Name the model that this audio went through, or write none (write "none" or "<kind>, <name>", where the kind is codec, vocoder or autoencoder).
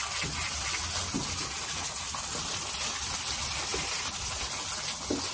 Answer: none